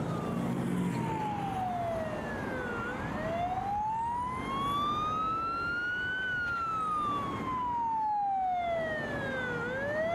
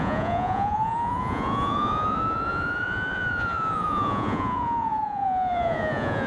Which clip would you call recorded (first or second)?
first